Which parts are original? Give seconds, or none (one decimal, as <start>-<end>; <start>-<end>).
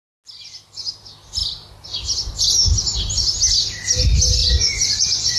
0.0-4.4